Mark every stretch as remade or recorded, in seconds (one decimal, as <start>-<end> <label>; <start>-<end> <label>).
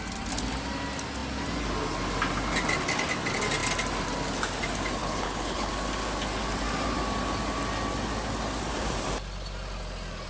0.0-5.0 recorded; 5.0-5.7 remade; 5.7-10.3 recorded